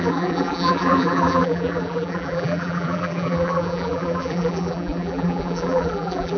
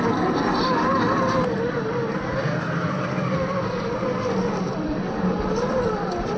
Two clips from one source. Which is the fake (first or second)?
first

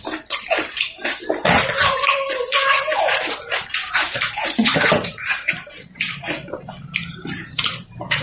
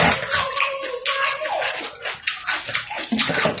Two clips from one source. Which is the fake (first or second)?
first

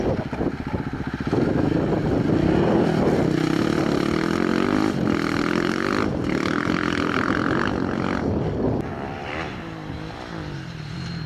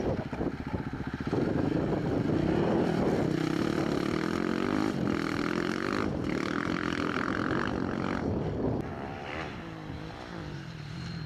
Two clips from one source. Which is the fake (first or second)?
second